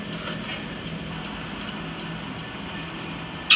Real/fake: real